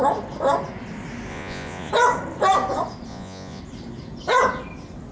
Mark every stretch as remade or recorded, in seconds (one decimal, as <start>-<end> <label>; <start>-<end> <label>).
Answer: 0.0-1.3 recorded; 1.3-1.9 remade; 1.9-3.1 recorded; 3.1-3.6 remade; 3.6-5.1 recorded